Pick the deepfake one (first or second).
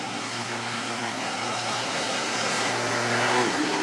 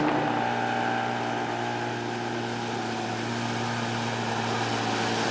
first